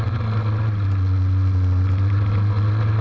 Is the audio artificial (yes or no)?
no